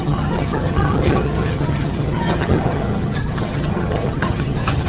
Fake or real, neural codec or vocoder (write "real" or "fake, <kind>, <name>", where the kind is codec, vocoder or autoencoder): fake, vocoder, HiFi-GAN